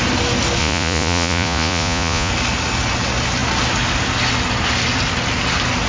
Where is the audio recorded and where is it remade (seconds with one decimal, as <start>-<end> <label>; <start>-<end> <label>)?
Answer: 0.0-0.6 recorded; 0.6-2.3 remade; 2.3-5.9 recorded